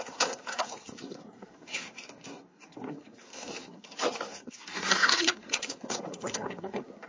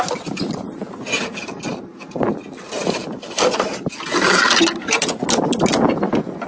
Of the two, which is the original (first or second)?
second